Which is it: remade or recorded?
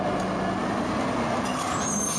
recorded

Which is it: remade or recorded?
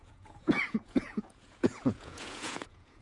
remade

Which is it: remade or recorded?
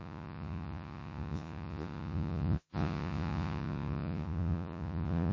remade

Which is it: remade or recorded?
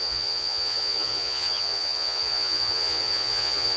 remade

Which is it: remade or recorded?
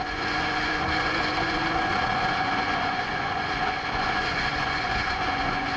remade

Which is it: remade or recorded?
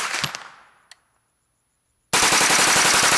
recorded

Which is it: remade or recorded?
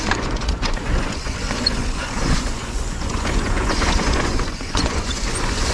remade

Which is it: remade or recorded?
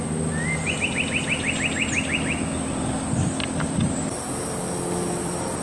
recorded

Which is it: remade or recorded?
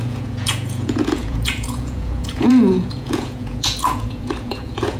remade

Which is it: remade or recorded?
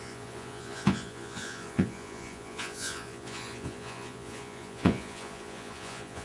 remade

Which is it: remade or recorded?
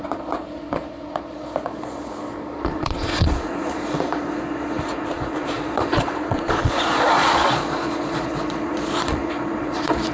remade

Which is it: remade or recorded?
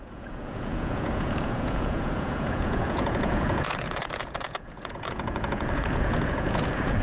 remade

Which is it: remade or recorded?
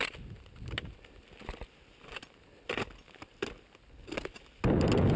recorded